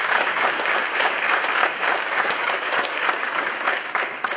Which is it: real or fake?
fake